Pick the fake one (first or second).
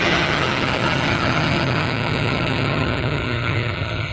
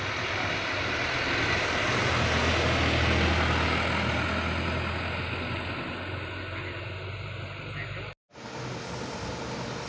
first